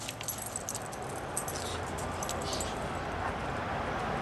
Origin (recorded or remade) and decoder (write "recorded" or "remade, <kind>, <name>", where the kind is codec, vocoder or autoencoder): recorded